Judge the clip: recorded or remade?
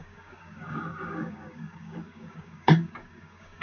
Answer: remade